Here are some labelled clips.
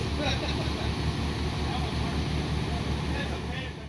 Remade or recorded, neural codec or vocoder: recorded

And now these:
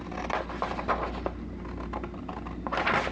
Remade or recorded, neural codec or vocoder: recorded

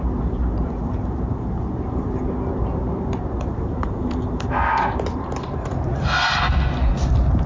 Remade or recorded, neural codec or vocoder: recorded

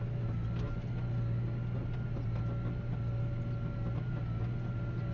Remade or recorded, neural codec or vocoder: recorded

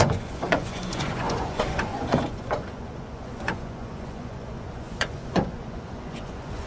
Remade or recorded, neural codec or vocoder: remade, vocoder, Vocos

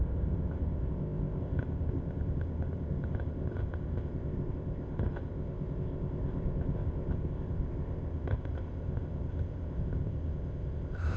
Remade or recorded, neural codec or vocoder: remade, codec, ZipCodec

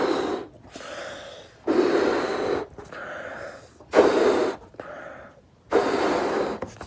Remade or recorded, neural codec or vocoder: recorded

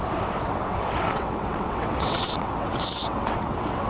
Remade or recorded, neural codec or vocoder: remade, vocoder, WaveNeXt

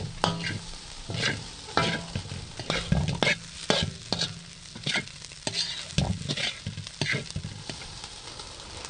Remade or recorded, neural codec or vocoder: recorded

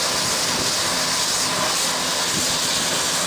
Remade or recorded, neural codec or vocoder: recorded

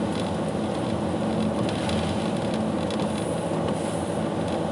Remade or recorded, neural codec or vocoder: recorded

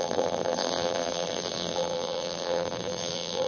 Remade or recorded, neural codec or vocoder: remade, vocoder, BigVGAN v2